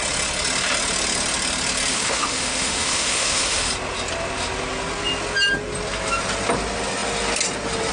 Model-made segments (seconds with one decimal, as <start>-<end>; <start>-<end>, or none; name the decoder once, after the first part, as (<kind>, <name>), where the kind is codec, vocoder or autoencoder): 1.9-3.7 (autoencoder, DAC-VAE)